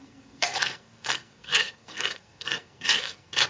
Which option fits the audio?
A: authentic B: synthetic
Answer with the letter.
B